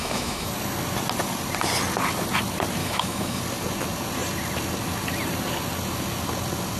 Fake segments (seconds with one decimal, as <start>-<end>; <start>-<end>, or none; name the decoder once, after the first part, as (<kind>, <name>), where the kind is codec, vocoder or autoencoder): 0.0-0.5 (autoencoder, DAC-VAE); 2.8-3.4